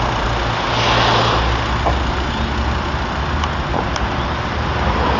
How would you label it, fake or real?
real